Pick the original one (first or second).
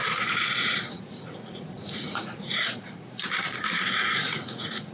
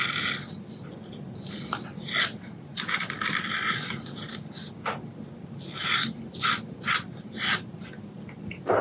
second